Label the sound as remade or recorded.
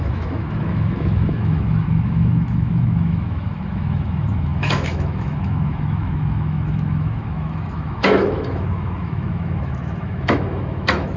remade